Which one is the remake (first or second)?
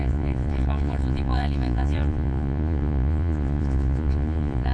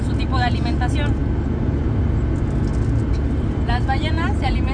first